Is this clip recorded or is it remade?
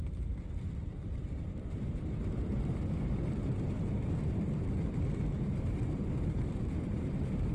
remade